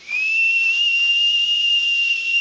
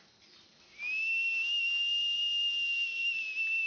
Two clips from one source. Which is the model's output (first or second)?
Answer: first